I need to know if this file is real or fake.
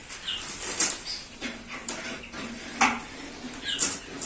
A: real